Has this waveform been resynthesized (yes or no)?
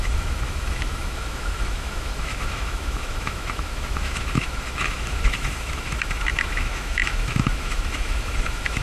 yes